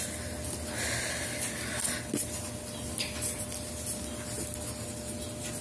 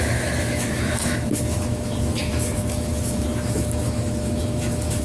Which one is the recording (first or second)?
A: first